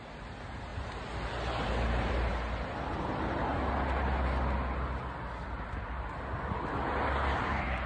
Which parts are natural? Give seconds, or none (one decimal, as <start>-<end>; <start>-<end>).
3.5-7.4